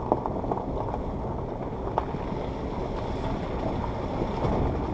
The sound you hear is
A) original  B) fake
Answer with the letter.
A